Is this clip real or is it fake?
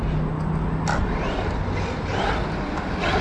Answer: real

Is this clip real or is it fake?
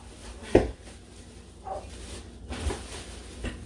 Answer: real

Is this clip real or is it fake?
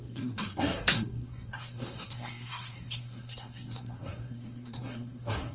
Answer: fake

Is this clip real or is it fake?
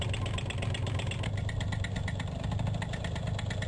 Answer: real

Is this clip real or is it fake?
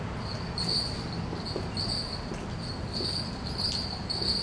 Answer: real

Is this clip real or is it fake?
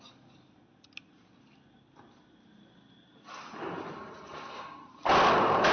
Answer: real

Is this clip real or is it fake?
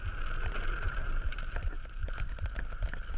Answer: real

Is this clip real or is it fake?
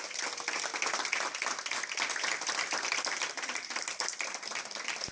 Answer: real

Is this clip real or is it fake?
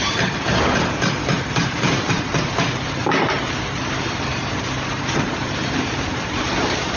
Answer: fake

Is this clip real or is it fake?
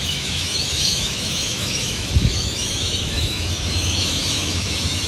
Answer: fake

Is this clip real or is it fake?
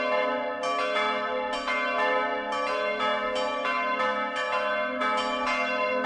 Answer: real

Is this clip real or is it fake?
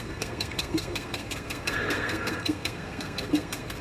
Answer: fake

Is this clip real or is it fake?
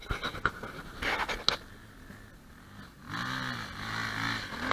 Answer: real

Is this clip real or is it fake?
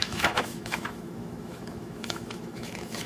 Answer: fake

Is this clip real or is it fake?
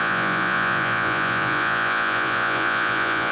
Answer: fake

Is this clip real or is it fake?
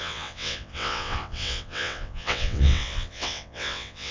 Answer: fake